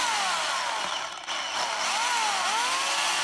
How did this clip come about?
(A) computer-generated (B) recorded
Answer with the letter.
B